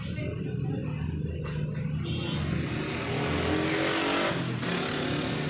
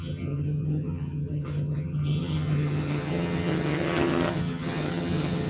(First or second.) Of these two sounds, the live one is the first